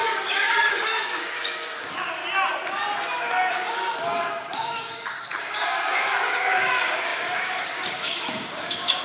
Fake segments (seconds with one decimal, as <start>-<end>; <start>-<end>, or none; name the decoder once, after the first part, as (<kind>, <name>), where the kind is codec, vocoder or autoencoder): 0.0-2.2 (codec, DAC); 3.2-9.0